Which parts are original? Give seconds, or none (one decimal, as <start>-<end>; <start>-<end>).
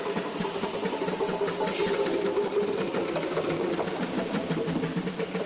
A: none